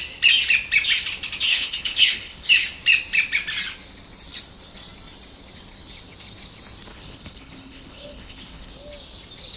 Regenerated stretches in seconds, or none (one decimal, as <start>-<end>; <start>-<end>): 1.5-2.5; 6.9-8.7